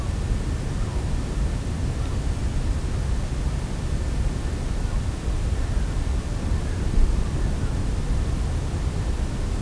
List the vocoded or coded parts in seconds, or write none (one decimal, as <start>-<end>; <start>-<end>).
none